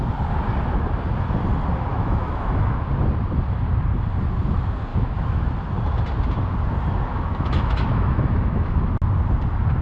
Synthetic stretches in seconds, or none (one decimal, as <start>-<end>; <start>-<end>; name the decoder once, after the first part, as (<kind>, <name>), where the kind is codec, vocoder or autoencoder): 1.9-2.9 (autoencoder, DAC-VAE); 4.9-5.5; 7.1-8.9

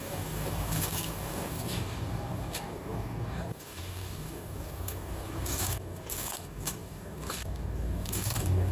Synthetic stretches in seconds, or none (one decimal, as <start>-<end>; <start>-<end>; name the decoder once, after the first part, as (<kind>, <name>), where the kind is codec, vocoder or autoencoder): 0.0-8.7 (codec, DAC)